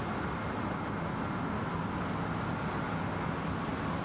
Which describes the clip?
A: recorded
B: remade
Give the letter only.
A